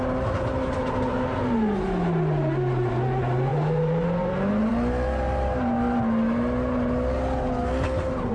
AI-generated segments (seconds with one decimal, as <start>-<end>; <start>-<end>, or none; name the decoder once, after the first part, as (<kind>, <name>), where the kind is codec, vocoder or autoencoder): 0.8-1.4 (vocoder, BigVGAN v2); 3.5-4.3